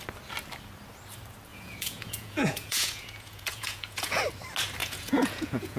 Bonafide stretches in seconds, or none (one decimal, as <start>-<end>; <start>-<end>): 0.0-1.5; 4.2-4.8